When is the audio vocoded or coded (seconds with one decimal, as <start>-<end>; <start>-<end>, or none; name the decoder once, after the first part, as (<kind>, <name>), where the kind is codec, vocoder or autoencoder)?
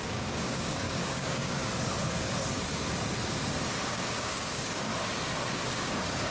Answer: 0.0-1.6 (codec, DAC); 3.9-4.9; 5.5-6.3